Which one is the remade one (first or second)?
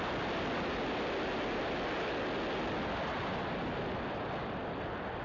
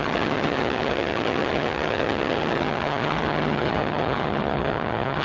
second